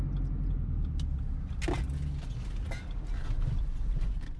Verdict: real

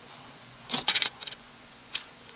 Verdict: fake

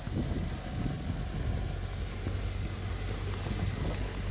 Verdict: real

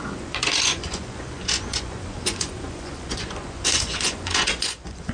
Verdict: fake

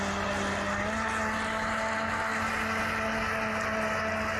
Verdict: real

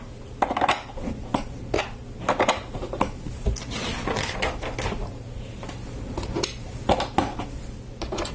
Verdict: real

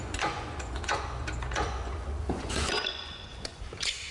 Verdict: fake